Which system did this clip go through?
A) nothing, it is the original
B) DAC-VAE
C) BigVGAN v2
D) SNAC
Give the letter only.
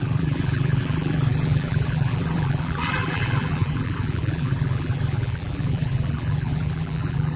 C